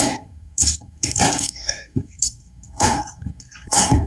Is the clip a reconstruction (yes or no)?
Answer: yes